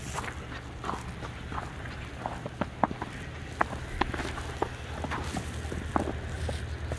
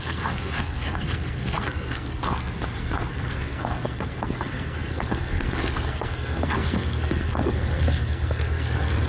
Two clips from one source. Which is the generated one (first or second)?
second